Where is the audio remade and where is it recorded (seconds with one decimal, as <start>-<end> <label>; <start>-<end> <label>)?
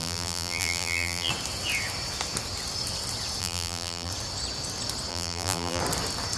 0.0-1.3 remade; 1.3-3.4 recorded; 3.4-4.1 remade; 4.1-5.1 recorded; 5.1-5.8 remade; 5.8-6.4 recorded